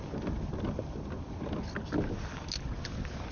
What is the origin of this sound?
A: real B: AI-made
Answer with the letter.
A